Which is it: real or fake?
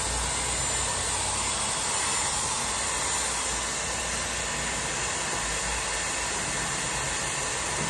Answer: real